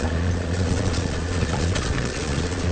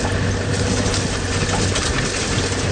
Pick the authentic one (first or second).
second